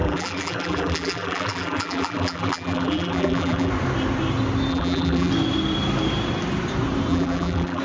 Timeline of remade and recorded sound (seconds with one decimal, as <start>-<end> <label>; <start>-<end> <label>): 0.0-3.7 remade; 3.7-4.7 recorded; 4.7-5.3 remade; 5.3-7.1 recorded; 7.1-7.8 remade